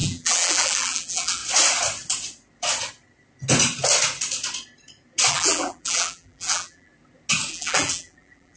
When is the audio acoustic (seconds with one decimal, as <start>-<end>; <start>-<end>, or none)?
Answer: 1.4-5.3; 6.9-7.5